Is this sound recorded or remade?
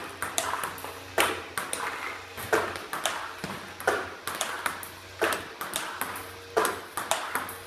recorded